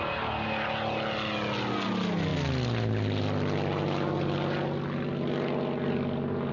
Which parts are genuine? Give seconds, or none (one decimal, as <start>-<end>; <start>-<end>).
0.0-6.5